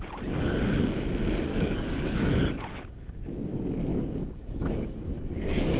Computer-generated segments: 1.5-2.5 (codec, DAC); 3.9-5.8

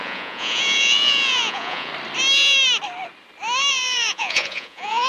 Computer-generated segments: 0.0-1.9 (vocoder, Vocos); 3.7-5.1

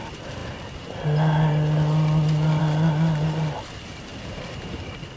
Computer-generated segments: none

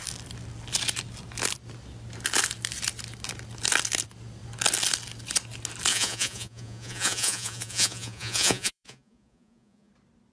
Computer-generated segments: 5.9-9.9 (vocoder, Vocos)

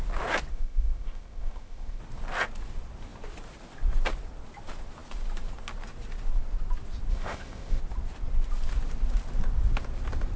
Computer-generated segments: 0.5-2.0 (codec, ZipCodec); 7.1-7.8

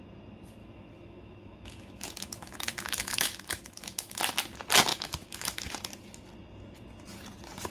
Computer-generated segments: 0.6-4.2 (autoencoder, DAC-VAE); 4.9-5.7